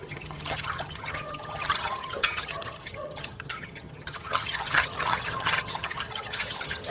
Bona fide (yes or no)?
no